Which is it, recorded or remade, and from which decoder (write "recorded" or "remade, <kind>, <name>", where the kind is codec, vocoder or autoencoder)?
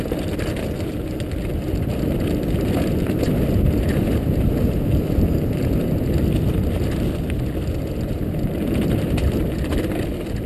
recorded